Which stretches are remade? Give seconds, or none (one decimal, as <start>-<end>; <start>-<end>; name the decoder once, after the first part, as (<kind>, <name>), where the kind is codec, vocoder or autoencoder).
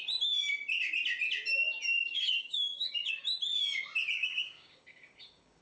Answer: 2.0-3.1 (codec, DAC); 4.2-5.6